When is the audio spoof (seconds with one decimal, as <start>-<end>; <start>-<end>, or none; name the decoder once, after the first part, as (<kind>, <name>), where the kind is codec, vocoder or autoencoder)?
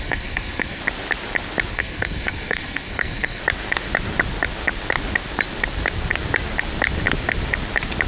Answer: 0.0-0.8 (codec, SNAC); 1.7-3.4